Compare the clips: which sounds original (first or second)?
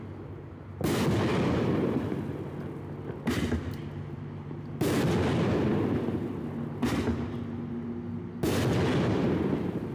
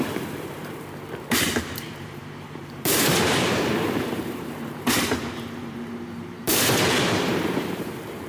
first